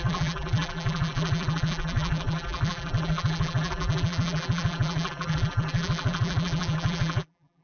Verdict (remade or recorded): remade